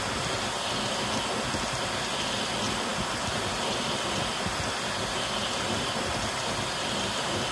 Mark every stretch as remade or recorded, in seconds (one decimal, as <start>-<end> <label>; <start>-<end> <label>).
0.0-2.9 recorded; 2.9-7.5 remade